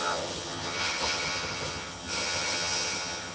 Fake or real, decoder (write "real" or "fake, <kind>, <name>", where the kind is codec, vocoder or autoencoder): fake, vocoder, HiFi-GAN